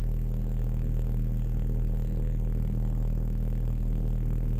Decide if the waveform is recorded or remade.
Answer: remade